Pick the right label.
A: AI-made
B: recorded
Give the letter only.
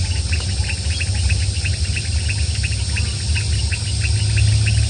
B